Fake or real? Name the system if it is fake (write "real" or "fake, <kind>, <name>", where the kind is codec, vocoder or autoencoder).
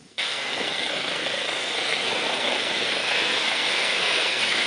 fake, codec, SNAC